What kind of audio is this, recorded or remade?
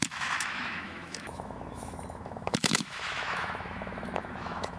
remade